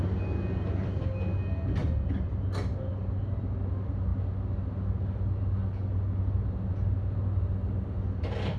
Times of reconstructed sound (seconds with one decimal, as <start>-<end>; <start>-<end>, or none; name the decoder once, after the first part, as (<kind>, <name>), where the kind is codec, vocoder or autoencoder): none